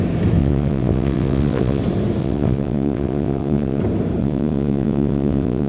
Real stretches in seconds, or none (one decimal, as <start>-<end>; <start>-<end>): 0.0-0.4; 1.8-2.2; 3.8-4.2